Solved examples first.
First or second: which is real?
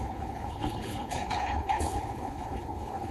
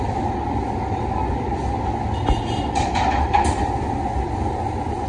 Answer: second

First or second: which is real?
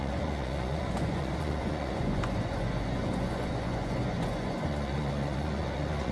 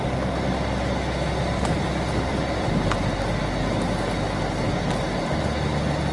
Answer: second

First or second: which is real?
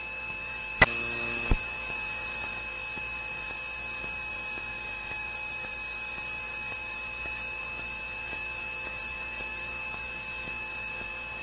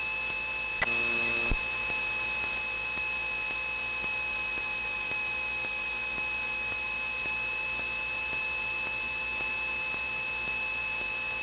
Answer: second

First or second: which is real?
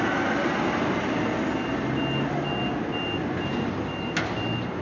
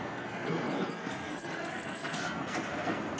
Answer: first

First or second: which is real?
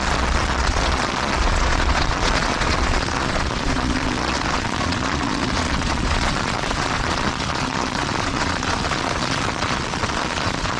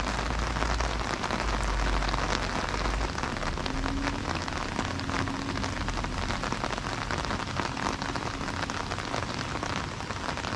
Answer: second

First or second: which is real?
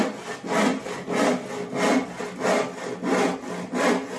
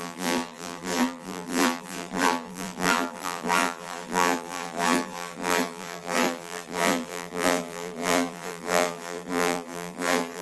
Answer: first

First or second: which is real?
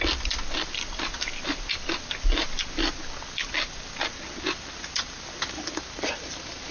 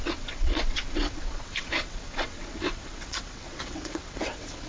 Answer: first